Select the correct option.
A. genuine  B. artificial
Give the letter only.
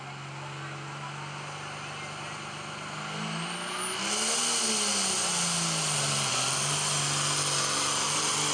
A